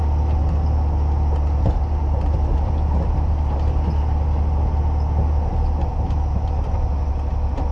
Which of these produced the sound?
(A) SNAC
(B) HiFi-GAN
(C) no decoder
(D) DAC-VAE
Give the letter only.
C